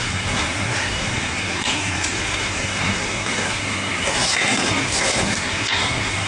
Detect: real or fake fake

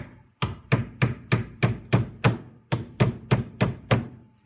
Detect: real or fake real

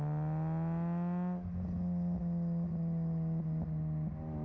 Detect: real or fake real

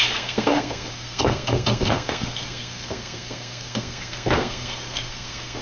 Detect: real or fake fake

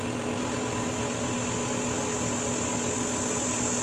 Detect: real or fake real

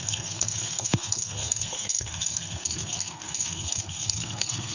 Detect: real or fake fake